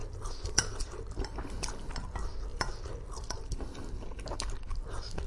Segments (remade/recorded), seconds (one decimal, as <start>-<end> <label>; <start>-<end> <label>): 0.0-1.0 remade; 1.0-2.5 recorded; 2.5-3.4 remade; 3.4-5.3 recorded